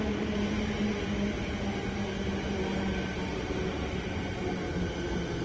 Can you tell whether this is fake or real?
real